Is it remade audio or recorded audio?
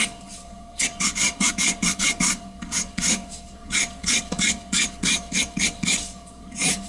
remade